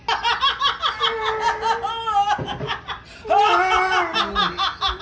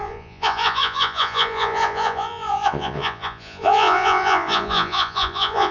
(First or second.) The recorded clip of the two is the first